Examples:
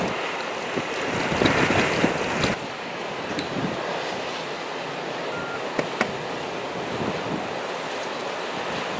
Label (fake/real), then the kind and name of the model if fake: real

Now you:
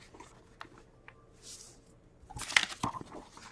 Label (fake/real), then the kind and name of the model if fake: real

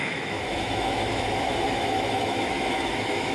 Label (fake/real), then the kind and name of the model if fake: fake, autoencoder, DAC-VAE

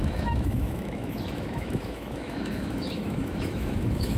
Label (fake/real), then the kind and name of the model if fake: fake, autoencoder, DAC-VAE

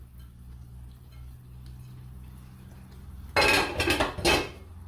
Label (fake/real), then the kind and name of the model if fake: real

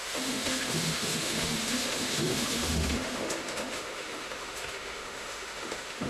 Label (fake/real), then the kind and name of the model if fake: fake, autoencoder, DAC-VAE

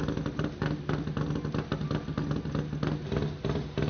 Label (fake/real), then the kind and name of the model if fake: real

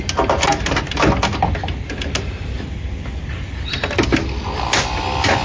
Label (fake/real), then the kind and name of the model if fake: real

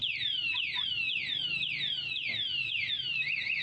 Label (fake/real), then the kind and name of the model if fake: real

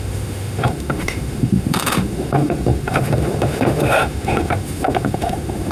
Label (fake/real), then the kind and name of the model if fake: fake, autoencoder, DAC-VAE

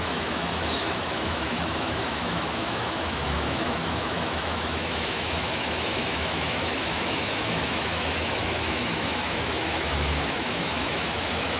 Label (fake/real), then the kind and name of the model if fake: fake, autoencoder, DAC-VAE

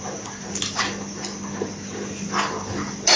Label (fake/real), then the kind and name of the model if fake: real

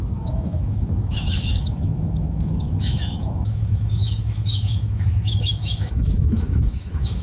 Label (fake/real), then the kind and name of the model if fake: fake, autoencoder, DAC-VAE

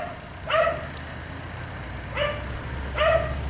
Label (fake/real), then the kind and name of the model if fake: real